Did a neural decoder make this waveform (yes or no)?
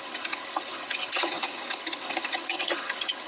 yes